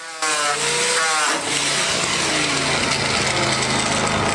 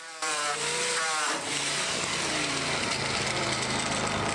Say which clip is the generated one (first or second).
second